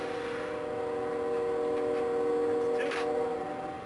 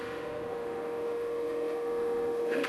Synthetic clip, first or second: second